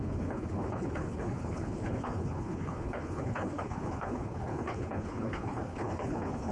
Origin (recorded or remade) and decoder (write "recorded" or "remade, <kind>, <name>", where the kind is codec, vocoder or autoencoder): remade, codec, HILCodec